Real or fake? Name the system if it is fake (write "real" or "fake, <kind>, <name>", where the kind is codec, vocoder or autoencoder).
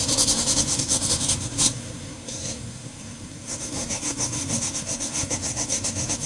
fake, codec, SNAC